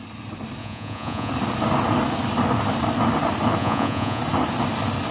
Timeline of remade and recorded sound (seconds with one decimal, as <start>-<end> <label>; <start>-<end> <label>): 0.0-0.6 recorded; 0.6-1.3 remade; 1.3-3.6 recorded; 3.6-4.2 remade; 4.2-5.1 recorded